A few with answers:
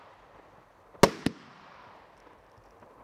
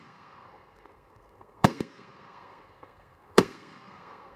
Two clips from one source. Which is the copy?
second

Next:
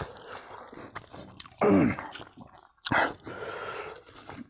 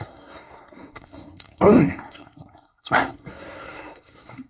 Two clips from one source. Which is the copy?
second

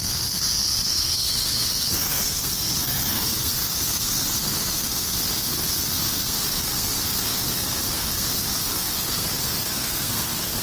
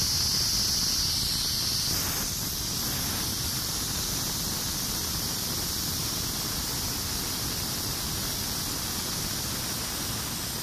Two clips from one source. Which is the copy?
first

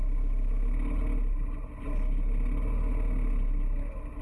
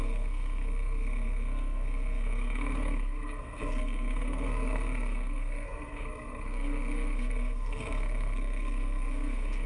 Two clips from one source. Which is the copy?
second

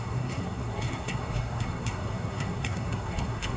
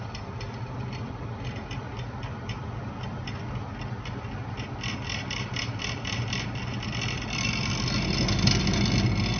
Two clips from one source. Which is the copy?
first